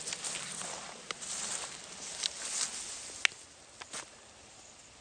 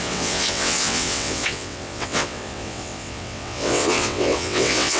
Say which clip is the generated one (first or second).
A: second